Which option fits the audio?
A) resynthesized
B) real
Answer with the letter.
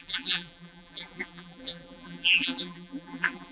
A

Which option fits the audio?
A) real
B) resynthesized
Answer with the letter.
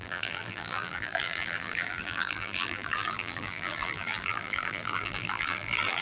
B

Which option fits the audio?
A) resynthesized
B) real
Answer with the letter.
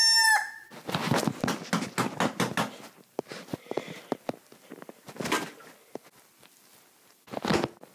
B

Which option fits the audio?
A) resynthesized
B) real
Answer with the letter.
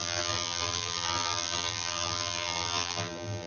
A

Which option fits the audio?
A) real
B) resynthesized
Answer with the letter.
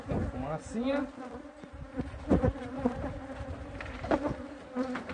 B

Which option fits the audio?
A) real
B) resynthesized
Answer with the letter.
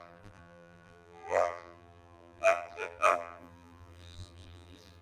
B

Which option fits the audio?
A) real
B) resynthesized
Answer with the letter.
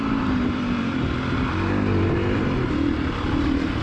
B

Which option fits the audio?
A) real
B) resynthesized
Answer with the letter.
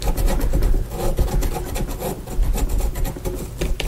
A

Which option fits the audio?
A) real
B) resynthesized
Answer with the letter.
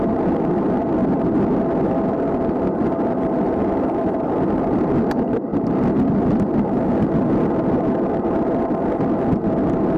A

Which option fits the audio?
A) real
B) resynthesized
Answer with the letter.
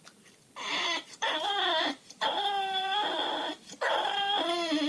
B